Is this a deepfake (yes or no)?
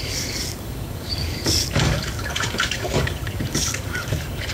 yes